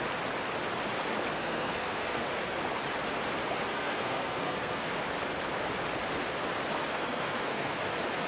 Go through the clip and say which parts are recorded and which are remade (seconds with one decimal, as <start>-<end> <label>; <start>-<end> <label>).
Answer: 0.0-1.4 recorded; 1.4-2.2 remade; 2.2-3.7 recorded; 3.7-4.9 remade; 4.9-6.9 recorded; 6.9-7.8 remade; 7.8-8.3 recorded